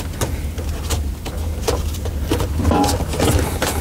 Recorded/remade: recorded